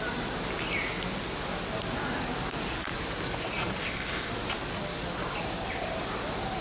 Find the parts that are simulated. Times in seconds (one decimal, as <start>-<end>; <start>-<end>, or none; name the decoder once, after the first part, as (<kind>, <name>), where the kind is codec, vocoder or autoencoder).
3.8-4.3 (codec, ZipCodec)